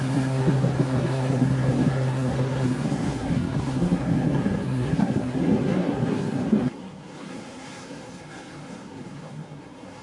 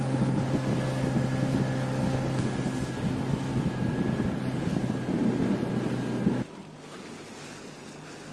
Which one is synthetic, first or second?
first